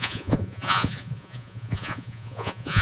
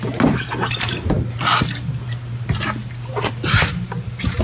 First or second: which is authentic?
second